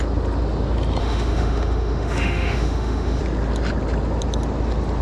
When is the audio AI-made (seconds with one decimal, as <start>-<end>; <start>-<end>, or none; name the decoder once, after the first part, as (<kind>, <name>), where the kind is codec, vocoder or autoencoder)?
1.0-3.2 (autoencoder, DAC-VAE)

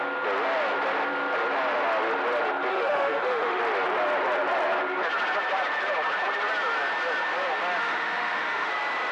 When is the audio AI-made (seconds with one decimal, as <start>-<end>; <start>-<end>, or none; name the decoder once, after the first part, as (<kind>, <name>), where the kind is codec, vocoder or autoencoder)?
2.7-3.6 (autoencoder, DAC-VAE); 7.8-8.7

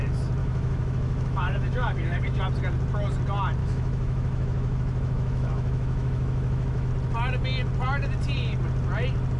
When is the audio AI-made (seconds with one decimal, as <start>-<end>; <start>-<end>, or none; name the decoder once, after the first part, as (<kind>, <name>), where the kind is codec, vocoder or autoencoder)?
0.4-2.4 (autoencoder, DAC-VAE); 3.6-6.9

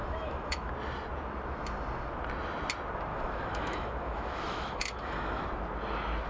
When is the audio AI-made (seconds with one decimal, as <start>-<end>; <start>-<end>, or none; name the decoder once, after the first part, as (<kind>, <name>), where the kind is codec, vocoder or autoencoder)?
0.0-0.7 (autoencoder, DAC-VAE); 3.1-5.4